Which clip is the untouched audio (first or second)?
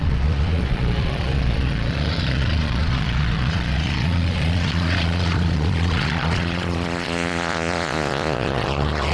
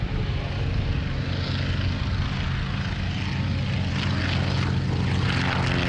second